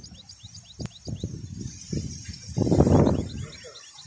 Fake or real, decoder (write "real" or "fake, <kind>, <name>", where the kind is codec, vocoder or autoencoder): real